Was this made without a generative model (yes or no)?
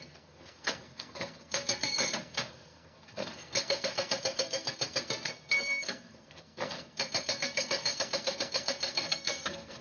no